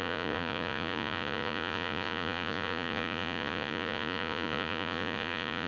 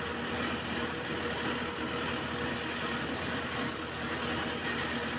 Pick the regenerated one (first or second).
first